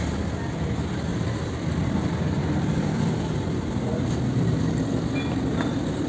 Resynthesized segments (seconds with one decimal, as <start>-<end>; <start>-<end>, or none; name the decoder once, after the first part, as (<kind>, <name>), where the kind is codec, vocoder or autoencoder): 1.1-4.8 (vocoder, BigVGAN v2); 5.5-6.1